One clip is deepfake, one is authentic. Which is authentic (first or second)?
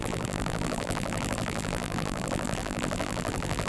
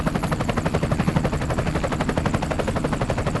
second